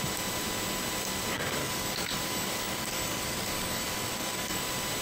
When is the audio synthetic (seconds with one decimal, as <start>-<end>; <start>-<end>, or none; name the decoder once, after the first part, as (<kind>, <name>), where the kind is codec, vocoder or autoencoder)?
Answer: 1.6-4.6 (codec, DAC)